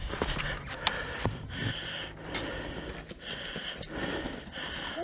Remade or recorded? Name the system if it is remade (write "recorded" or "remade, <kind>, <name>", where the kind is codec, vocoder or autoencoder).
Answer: recorded